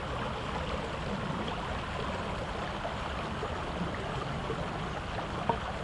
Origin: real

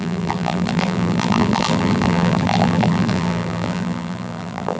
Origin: fake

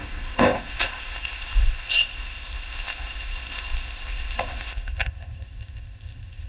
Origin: fake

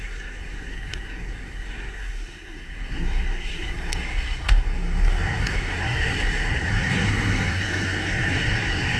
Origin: fake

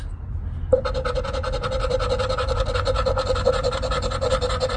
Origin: real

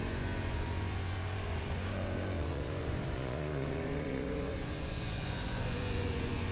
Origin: fake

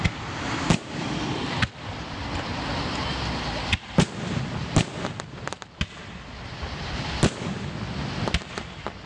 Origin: real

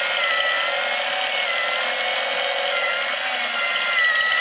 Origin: real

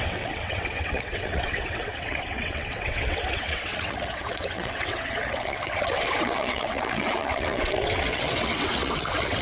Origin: fake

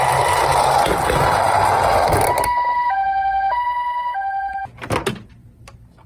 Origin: real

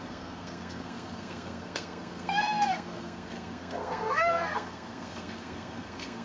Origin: fake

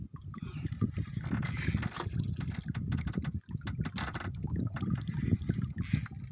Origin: real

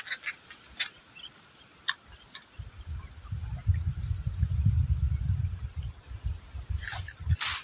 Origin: real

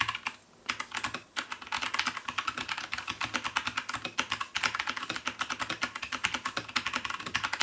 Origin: real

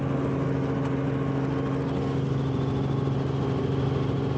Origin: real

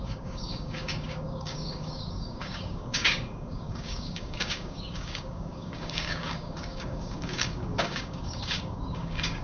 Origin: fake